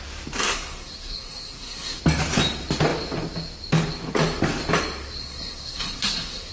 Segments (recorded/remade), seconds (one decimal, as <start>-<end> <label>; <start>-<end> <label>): 0.0-0.4 recorded; 0.4-2.0 remade; 2.0-5.2 recorded; 5.2-6.5 remade